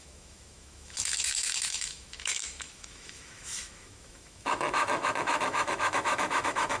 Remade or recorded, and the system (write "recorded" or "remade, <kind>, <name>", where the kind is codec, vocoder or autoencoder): remade, autoencoder, DAC-VAE